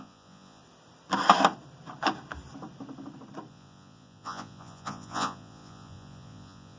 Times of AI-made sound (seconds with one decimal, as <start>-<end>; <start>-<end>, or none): 0.0-0.6; 3.5-6.8